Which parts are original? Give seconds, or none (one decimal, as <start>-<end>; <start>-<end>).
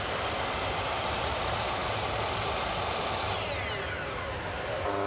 0.0-5.1